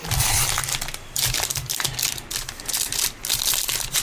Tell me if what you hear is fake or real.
real